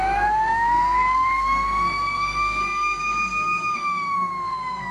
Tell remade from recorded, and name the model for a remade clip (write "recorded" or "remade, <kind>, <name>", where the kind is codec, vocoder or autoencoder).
remade, codec, SNAC